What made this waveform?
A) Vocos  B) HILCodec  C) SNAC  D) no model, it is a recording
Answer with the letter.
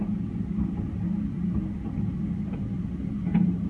D